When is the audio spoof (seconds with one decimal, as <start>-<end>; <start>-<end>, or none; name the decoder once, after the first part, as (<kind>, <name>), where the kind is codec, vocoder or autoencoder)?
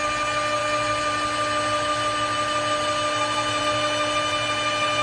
none